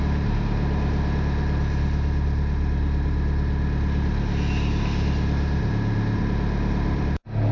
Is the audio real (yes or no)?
yes